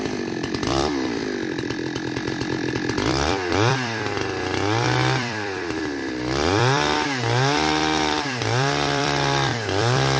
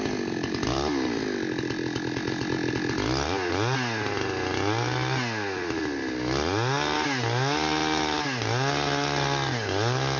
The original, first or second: second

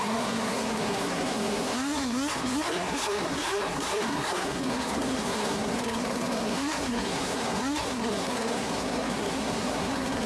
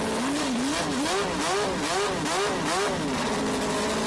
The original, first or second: second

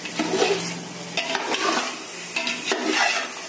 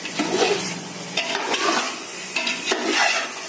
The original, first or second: first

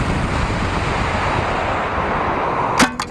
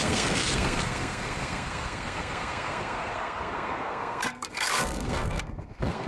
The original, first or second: first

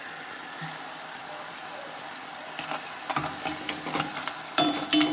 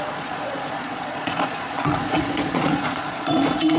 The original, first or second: first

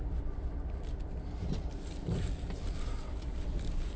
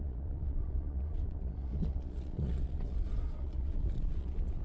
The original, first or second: first